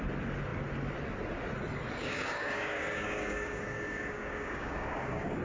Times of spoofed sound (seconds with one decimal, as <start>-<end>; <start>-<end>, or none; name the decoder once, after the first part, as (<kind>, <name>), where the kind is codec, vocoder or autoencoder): 2.0-5.4 (codec, DAC)